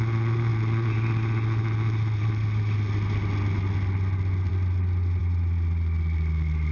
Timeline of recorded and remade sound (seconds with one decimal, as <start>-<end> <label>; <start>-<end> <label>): 0.0-6.7 recorded